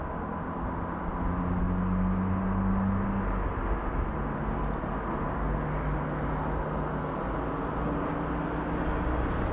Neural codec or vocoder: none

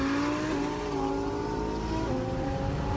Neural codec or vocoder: none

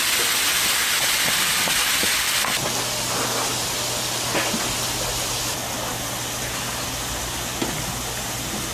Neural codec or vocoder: none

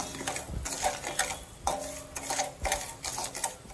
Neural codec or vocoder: none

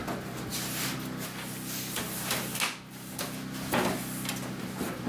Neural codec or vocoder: none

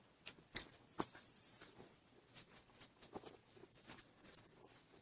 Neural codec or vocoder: none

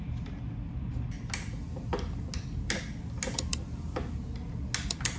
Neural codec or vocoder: none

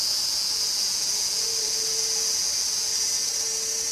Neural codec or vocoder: none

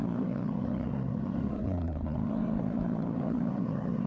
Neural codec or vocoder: codec, SNAC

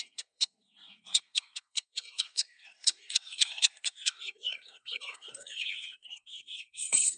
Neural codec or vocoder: codec, SNAC